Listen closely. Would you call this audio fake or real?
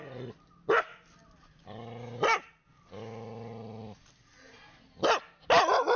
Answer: real